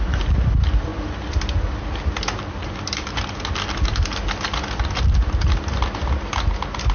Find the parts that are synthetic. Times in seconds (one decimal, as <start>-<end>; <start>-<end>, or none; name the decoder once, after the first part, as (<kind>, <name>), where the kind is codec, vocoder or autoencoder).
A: none